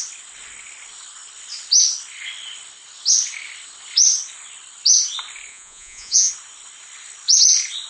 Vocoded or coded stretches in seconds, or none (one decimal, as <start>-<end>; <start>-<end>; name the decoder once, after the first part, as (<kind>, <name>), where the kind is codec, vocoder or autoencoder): 5.5-6.3 (vocoder, Vocos)